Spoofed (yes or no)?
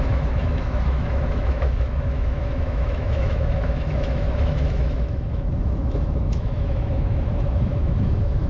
yes